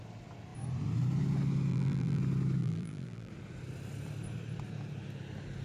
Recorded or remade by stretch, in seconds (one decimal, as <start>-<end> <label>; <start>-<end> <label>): 0.0-1.7 recorded; 1.7-2.2 remade; 2.2-2.6 recorded; 2.6-3.3 remade; 3.3-5.6 recorded

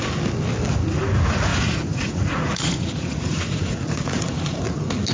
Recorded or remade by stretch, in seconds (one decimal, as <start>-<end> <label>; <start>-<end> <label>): 0.0-1.5 recorded; 1.5-4.6 remade; 4.6-5.1 recorded

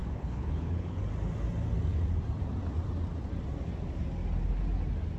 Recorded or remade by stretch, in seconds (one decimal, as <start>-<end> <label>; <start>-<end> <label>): 0.0-1.0 remade; 1.0-5.2 recorded

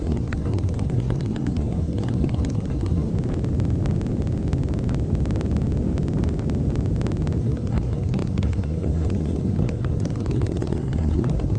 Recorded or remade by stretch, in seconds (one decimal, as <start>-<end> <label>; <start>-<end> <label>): 0.0-3.1 remade; 3.1-7.4 recorded; 7.4-11.6 remade

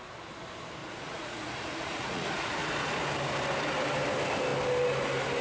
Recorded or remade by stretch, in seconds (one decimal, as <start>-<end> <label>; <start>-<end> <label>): 0.0-0.8 recorded; 0.8-2.5 remade; 2.5-5.4 recorded

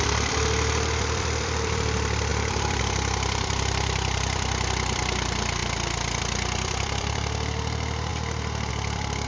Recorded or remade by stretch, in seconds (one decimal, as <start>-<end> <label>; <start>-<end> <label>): 0.0-5.6 remade; 5.6-6.2 recorded; 6.2-8.1 remade; 8.1-8.7 recorded; 8.7-9.3 remade

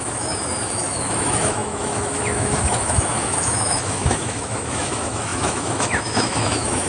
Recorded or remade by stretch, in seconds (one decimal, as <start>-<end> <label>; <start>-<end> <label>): 0.0-6.9 remade

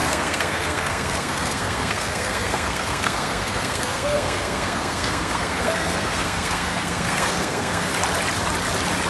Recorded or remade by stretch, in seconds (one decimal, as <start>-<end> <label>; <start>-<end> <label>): 0.0-7.9 remade; 7.9-9.1 recorded